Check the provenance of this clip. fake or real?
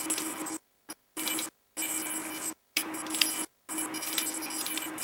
real